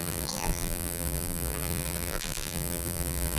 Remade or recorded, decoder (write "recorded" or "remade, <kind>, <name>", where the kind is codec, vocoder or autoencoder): remade, vocoder, BigVGAN v2